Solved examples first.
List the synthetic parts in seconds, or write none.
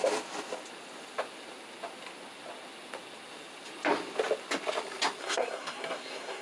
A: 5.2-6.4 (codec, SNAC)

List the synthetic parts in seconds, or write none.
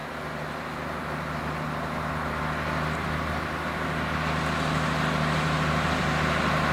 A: none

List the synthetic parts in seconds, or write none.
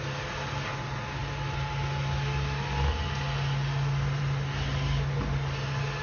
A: none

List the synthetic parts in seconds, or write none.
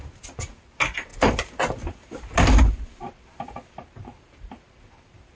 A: none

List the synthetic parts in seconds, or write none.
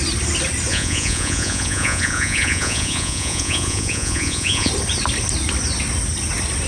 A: 0.7-4.7 (vocoder, Vocos)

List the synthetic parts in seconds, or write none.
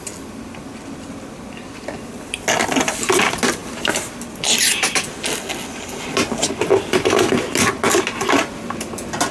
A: none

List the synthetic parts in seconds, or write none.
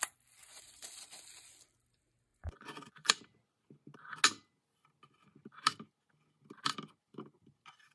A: 0.4-0.9 (vocoder, Vocos); 2.3-3.2